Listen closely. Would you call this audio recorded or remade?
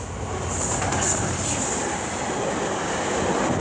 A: recorded